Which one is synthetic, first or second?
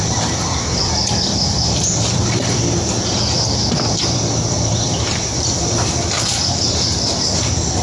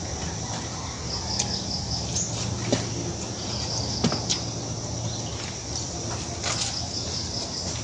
first